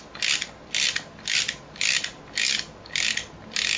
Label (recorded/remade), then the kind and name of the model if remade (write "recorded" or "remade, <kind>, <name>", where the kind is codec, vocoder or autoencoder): recorded